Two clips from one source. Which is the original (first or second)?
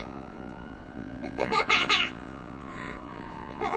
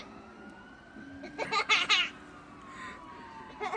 second